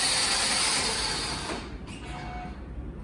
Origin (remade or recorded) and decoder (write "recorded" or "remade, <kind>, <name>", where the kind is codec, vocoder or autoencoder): recorded